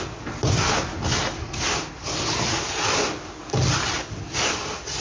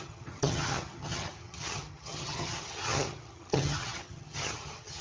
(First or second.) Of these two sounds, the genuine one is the first